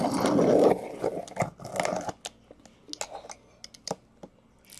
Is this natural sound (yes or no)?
yes